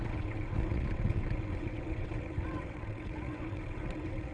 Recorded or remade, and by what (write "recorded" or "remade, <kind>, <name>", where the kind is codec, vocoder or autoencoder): remade, vocoder, WaveNeXt